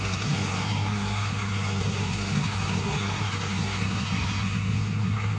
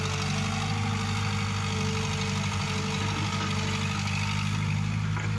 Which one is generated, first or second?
first